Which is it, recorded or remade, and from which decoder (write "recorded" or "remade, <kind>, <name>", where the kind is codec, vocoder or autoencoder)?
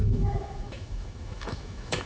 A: remade, autoencoder, DAC-VAE